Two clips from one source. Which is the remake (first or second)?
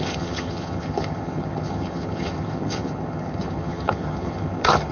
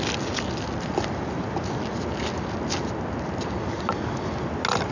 first